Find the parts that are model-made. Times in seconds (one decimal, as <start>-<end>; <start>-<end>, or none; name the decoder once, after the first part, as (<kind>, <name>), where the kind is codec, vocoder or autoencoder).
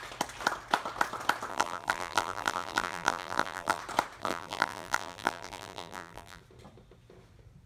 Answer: 1.5-3.8 (vocoder, BigVGAN v2); 4.2-6.4